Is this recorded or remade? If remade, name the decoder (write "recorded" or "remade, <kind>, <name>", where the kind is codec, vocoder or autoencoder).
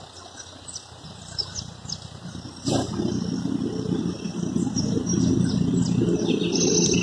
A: recorded